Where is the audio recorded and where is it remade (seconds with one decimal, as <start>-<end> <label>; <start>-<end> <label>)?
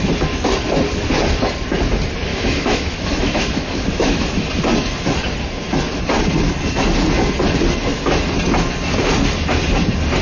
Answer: 0.0-2.3 recorded; 2.3-4.5 remade; 4.5-10.2 recorded